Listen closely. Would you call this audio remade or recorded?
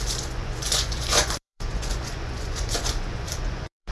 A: remade